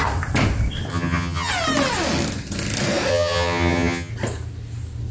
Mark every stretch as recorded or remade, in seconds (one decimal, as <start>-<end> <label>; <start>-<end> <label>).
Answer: 0.0-0.9 recorded; 0.9-1.5 remade; 1.5-3.1 recorded; 3.1-4.1 remade; 4.1-5.1 recorded